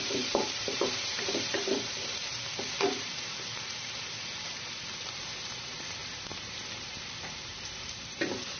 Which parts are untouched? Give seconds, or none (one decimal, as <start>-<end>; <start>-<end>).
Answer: 6.0-6.8